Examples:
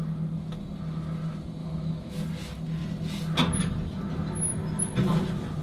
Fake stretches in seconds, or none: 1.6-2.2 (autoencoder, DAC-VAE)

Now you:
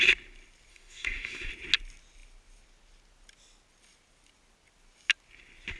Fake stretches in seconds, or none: 0.7-1.5 (autoencoder, DAC-VAE)